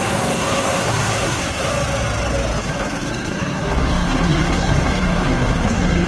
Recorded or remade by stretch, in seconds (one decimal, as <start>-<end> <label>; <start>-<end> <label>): 0.0-1.7 remade; 1.7-2.6 recorded; 2.6-6.1 remade